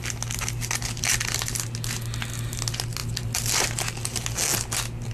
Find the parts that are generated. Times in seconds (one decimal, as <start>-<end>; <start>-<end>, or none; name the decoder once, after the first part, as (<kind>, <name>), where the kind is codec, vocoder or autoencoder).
none